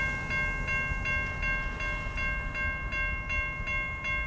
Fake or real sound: real